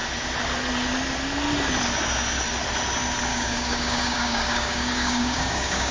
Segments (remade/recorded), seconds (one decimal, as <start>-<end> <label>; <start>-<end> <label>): 0.0-3.3 recorded; 3.3-5.9 remade